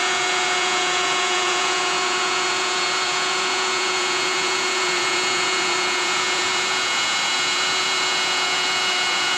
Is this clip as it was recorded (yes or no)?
no